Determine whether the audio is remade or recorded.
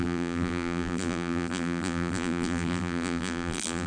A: remade